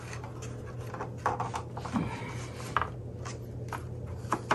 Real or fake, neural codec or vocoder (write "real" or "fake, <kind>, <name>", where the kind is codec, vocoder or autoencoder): real